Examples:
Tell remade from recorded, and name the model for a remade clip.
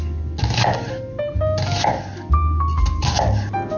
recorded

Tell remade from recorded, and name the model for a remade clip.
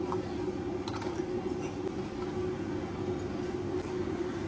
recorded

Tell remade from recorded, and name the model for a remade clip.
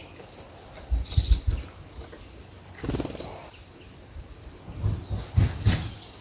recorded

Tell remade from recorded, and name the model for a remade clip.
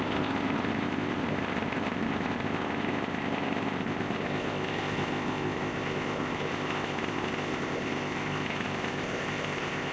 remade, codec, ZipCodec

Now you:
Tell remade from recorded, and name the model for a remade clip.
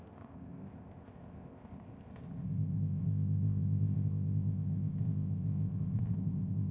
remade, codec, ZipCodec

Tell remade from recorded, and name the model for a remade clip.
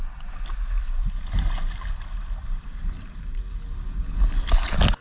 recorded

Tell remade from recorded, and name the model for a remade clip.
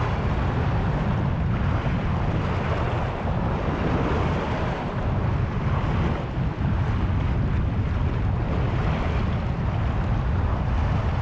recorded